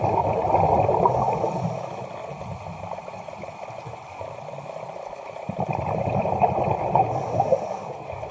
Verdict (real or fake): fake